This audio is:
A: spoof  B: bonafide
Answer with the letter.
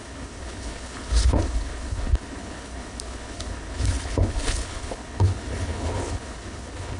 A